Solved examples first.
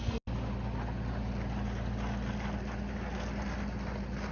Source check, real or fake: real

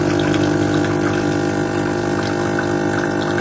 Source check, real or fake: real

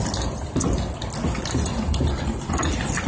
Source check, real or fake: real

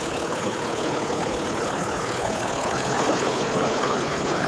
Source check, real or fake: fake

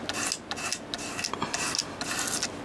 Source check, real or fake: real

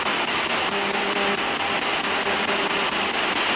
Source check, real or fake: real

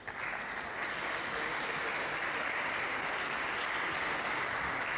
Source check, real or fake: real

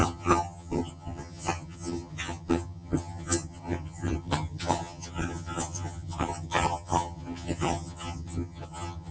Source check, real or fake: fake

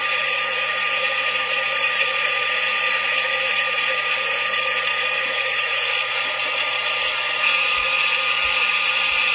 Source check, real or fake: fake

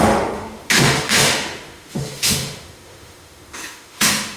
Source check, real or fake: fake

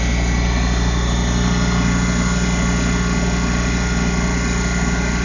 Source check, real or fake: real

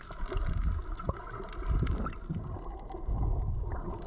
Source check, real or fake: real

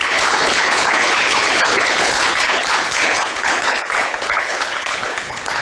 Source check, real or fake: fake